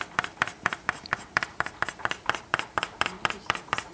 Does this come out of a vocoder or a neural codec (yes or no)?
yes